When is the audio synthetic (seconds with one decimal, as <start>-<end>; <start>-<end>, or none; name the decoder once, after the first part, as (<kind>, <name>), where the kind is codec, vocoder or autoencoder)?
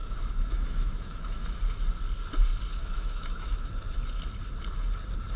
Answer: 0.0-1.6 (autoencoder, DAC-VAE); 2.8-3.7